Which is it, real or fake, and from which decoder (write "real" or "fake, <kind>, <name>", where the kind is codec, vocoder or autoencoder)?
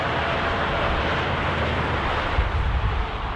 fake, vocoder, BigVGAN v2